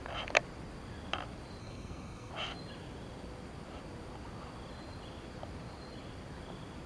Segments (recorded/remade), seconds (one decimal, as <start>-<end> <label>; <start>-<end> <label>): 0.0-1.6 recorded; 1.6-2.3 remade; 2.3-6.9 recorded